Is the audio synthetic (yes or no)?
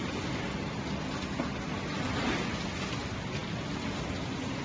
no